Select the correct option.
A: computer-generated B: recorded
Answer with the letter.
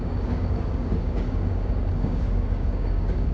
A